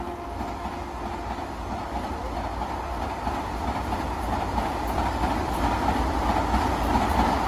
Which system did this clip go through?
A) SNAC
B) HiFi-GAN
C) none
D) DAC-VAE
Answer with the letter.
C